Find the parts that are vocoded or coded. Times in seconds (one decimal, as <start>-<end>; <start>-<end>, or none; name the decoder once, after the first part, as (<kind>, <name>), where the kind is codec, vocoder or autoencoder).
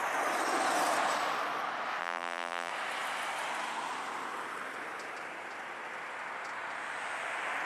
2.0-2.7 (vocoder, BigVGAN v2)